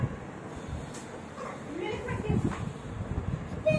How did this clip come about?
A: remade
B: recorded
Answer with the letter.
B